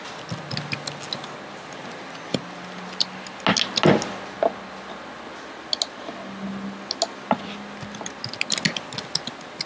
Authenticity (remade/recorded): recorded